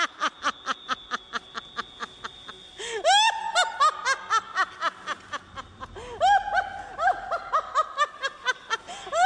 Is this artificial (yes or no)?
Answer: no